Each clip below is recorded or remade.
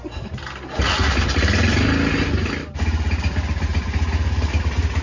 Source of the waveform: recorded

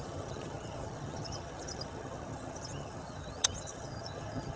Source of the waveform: remade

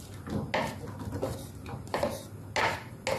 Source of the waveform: recorded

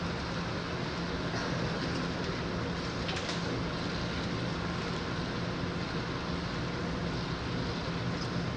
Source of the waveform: recorded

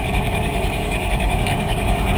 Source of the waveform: remade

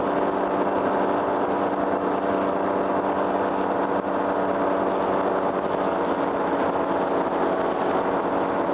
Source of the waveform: recorded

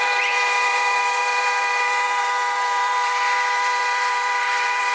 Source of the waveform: remade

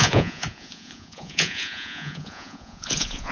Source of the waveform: remade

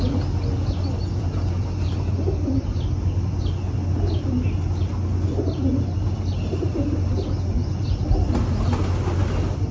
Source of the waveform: recorded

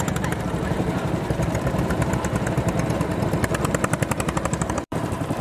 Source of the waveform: remade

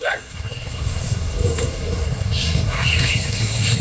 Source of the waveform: remade